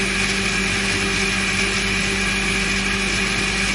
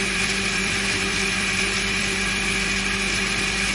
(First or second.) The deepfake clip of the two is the second